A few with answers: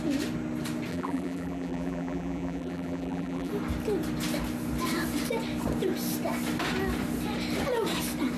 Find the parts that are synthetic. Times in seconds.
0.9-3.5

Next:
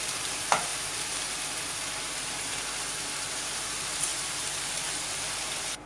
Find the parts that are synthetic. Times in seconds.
0.0-5.9

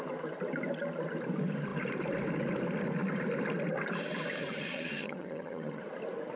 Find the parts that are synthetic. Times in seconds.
4.4-5.8

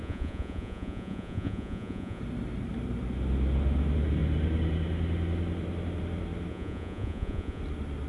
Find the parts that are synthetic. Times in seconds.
0.0-2.2; 6.5-7.6